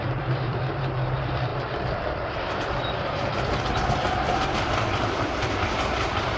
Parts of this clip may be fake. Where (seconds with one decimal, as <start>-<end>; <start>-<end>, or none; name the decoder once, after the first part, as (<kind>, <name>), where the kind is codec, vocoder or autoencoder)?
0.0-6.4 (vocoder, BigVGAN v2)

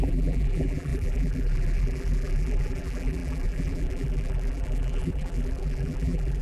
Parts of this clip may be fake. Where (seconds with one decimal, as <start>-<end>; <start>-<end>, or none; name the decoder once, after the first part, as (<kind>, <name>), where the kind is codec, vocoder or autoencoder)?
0.0-6.4 (vocoder, BigVGAN v2)

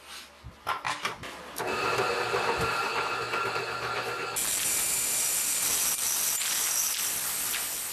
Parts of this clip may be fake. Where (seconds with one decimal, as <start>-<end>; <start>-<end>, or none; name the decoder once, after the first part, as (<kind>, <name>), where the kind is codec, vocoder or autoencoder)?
none

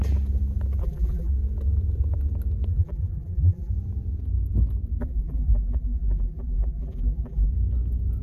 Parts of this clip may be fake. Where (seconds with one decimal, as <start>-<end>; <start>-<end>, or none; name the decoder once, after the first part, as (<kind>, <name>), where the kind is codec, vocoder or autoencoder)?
0.8-1.3 (vocoder, BigVGAN v2); 2.7-3.7; 5.0-7.5

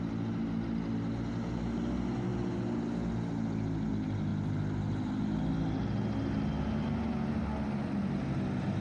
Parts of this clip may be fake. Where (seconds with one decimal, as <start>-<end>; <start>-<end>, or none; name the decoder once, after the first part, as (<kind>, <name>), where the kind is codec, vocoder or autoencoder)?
none

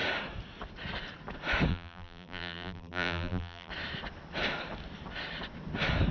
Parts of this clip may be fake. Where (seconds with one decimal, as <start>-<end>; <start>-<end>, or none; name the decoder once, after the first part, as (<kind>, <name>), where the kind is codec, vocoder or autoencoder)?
1.7-3.7 (vocoder, BigVGAN v2)

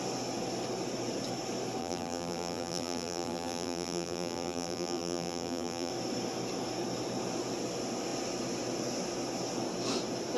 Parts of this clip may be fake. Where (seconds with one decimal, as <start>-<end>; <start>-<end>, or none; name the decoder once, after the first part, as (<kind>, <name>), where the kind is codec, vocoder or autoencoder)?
1.8-5.9 (vocoder, BigVGAN v2)

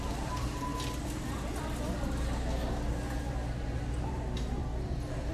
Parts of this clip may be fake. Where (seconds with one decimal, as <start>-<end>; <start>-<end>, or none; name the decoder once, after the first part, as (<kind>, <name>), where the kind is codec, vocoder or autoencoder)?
0.0-0.7 (vocoder, BigVGAN v2); 3.9-4.6